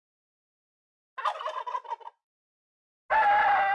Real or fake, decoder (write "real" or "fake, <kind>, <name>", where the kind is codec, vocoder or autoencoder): real